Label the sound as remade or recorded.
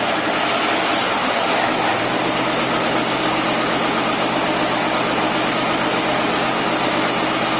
recorded